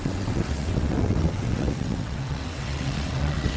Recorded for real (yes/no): no